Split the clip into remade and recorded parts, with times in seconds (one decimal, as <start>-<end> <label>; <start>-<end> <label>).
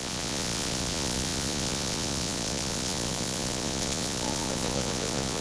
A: 0.0-5.4 remade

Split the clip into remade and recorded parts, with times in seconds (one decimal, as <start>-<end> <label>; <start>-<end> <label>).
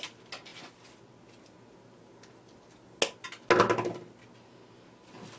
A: 0.0-5.4 recorded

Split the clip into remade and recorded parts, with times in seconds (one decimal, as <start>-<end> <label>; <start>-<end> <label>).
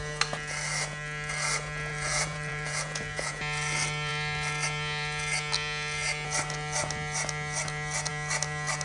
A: 0.0-1.9 recorded; 1.9-3.4 remade; 3.4-8.8 recorded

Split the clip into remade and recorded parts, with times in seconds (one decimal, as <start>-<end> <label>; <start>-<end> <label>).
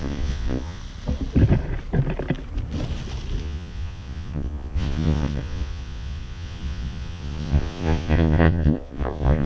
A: 0.0-0.8 remade; 0.8-3.4 recorded; 3.4-9.5 remade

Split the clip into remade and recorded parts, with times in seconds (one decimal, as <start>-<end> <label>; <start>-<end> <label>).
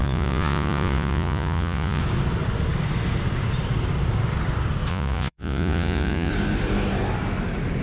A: 0.0-2.0 remade; 2.0-4.9 recorded; 4.9-6.3 remade; 6.3-7.8 recorded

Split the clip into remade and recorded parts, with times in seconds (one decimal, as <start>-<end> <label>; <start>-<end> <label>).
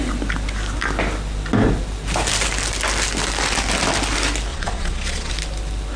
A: 0.0-4.5 recorded; 4.5-5.3 remade; 5.3-6.0 recorded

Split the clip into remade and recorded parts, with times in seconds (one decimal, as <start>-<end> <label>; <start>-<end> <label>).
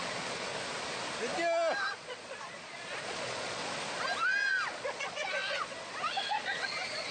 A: 0.0-0.5 remade; 0.5-1.9 recorded; 1.9-3.6 remade; 3.6-4.7 recorded; 4.7-7.1 remade